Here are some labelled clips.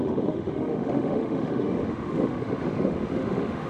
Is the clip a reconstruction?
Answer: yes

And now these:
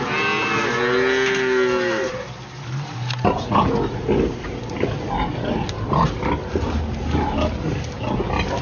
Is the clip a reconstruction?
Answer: no